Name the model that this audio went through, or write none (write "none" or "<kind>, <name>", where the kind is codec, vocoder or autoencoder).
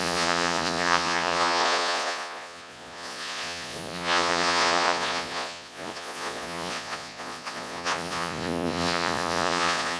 vocoder, Vocos